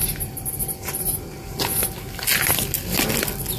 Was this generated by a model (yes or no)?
no